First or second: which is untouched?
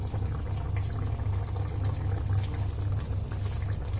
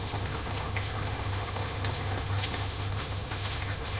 first